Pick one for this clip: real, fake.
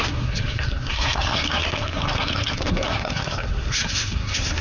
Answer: fake